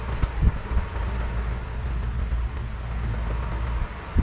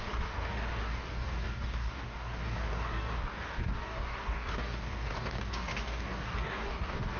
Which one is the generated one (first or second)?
second